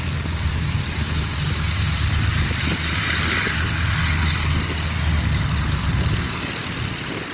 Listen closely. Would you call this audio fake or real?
real